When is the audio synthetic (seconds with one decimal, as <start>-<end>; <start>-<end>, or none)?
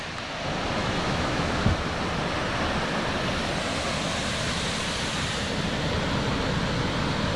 0.8-1.8